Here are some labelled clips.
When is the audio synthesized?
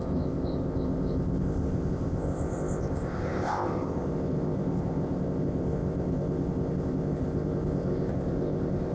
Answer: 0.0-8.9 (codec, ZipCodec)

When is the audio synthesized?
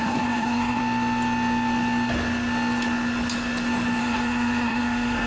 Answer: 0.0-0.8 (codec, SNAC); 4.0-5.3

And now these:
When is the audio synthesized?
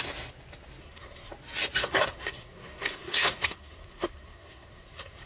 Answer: 0.8-1.3 (codec, SNAC); 1.8-5.3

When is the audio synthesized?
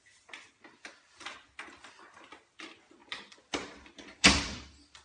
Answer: 3.0-4.6 (vocoder, BigVGAN v2)